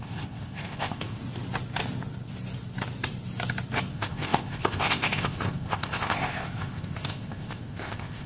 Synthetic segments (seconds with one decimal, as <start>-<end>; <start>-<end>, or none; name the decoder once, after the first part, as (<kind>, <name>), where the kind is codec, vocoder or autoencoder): 0.0-1.2 (codec, ZipCodec); 3.9-8.3